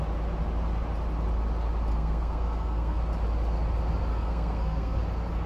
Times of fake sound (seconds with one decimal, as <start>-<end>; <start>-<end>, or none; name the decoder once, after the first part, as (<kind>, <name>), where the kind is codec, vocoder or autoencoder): 1.9-3.0 (codec, SNAC); 4.1-5.0